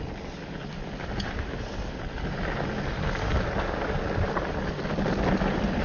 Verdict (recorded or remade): recorded